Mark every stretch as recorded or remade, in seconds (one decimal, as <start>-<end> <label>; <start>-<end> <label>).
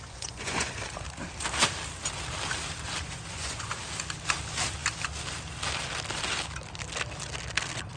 0.0-0.8 remade; 0.8-3.0 recorded; 3.0-3.8 remade; 3.8-8.0 recorded